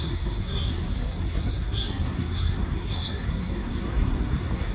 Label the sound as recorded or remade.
remade